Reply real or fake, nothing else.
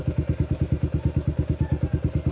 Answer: real